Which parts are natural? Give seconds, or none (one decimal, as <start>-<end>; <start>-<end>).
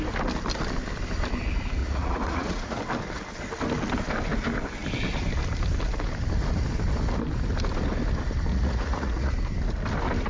0.0-1.8; 2.8-8.5; 9.3-10.3